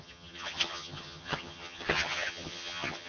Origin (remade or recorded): remade